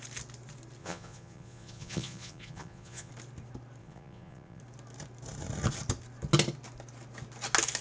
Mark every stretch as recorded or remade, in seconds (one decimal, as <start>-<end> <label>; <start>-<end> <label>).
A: 0.0-0.8 recorded; 0.8-3.1 remade; 3.1-3.8 recorded; 3.8-4.6 remade; 4.6-7.8 recorded